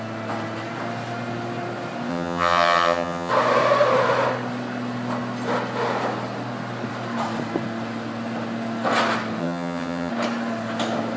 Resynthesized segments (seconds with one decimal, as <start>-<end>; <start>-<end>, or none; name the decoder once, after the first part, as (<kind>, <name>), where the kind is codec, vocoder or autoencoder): 2.1-3.3 (vocoder, HiFi-GAN); 9.4-10.1